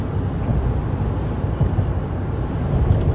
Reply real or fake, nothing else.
real